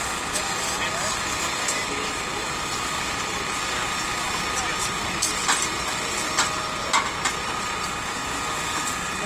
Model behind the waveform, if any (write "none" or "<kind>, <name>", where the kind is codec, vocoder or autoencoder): none